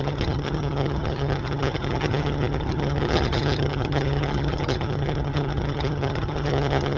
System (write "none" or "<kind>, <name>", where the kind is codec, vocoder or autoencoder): vocoder, HiFi-GAN